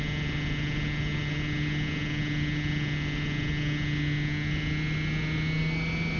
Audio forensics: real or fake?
real